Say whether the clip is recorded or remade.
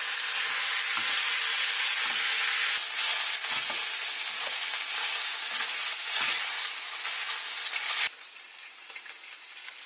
recorded